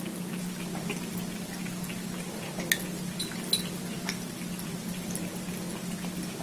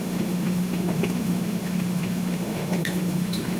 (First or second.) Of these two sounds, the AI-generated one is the second